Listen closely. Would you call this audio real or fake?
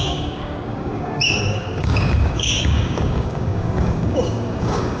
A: fake